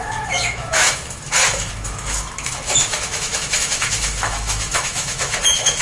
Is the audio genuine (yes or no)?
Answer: no